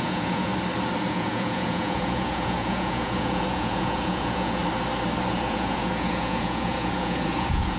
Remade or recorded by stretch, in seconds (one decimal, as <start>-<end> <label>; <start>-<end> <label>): 0.0-0.5 remade; 0.5-1.1 recorded; 1.1-4.6 remade; 4.6-5.3 recorded; 5.3-7.8 remade